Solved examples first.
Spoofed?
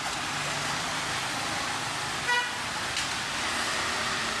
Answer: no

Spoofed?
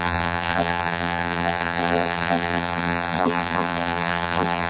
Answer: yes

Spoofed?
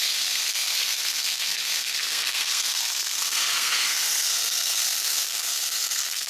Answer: yes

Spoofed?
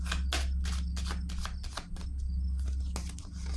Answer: no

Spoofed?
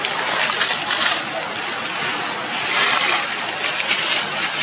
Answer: no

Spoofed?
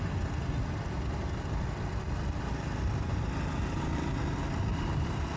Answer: no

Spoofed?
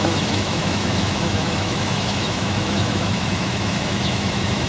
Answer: yes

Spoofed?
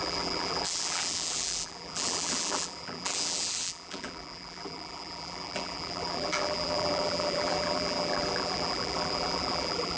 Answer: yes